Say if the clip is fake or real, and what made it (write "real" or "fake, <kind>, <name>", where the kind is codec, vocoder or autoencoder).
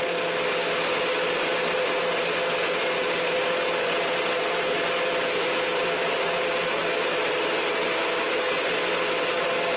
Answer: real